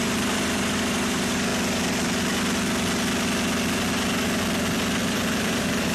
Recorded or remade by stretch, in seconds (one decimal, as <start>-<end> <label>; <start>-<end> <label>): 0.0-1.5 remade; 1.5-5.0 recorded; 5.0-5.9 remade